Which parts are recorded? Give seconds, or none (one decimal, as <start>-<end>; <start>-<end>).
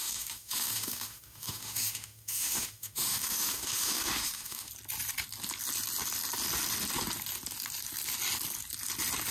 4.7-9.3